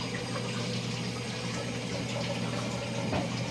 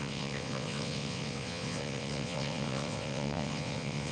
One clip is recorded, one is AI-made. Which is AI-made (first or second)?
second